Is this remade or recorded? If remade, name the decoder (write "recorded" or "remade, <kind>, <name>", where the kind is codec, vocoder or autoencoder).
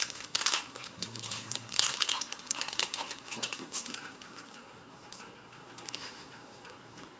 remade, codec, SNAC